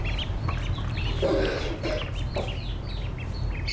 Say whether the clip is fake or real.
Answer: real